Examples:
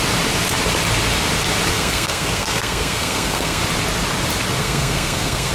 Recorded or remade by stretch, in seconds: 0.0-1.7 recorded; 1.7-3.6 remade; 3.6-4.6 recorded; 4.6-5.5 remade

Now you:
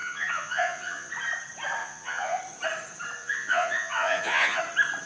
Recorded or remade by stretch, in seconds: 0.0-1.1 remade; 1.1-1.8 recorded; 1.8-2.4 remade; 2.4-3.2 recorded; 3.2-4.6 remade; 4.6-5.1 recorded